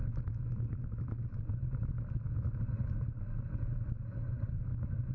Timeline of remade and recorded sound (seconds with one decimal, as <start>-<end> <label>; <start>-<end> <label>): 0.0-1.5 recorded; 1.5-4.6 remade; 4.6-5.1 recorded